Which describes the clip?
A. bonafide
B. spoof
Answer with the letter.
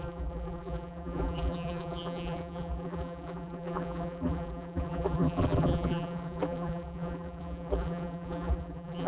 B